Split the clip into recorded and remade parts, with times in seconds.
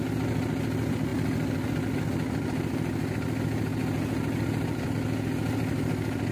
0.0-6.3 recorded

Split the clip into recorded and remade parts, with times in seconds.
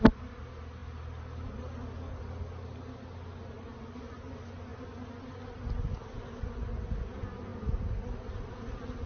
0.0-9.1 recorded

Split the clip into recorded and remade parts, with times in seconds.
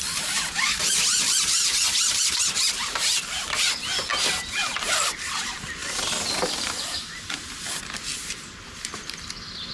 0.0-9.7 recorded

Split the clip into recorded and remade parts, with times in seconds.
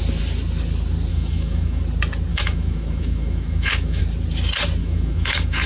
0.0-1.1 recorded; 1.1-1.8 remade; 1.8-2.3 recorded; 2.3-4.0 remade; 4.0-4.8 recorded; 4.8-5.7 remade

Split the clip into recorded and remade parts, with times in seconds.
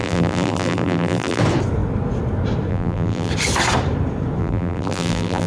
0.0-1.4 remade; 1.4-2.7 recorded; 2.7-3.3 remade; 3.3-4.4 recorded; 4.4-5.5 remade